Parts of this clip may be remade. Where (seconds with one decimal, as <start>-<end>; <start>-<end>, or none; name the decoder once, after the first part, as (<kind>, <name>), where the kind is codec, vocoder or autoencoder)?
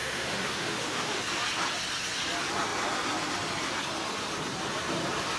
0.0-1.2 (autoencoder, DAC-VAE)